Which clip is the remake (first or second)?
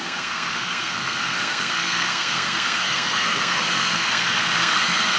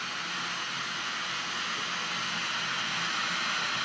first